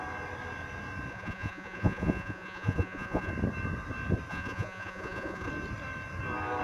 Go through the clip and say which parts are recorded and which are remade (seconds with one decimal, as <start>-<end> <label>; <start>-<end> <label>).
0.0-1.1 recorded; 1.1-3.3 remade; 3.3-4.3 recorded; 4.3-5.5 remade; 5.5-6.6 recorded